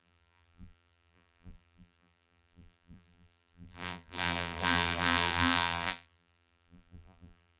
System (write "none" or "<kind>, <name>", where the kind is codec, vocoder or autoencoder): vocoder, BigVGAN v2